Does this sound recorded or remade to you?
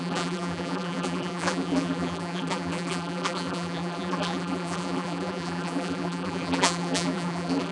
remade